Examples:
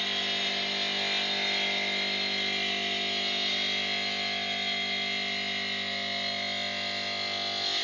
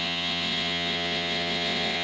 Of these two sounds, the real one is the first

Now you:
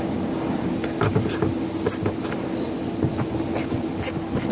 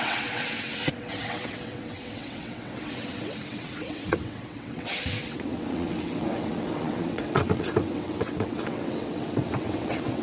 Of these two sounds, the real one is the first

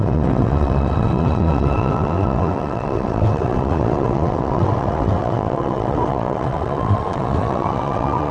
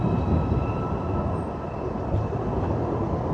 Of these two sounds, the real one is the second